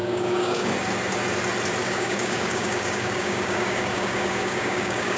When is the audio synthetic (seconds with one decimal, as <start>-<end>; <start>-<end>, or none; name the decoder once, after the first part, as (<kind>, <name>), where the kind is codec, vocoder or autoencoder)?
0.0-0.7 (codec, DAC); 1.8-5.2